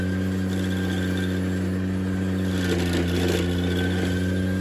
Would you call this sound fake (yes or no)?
no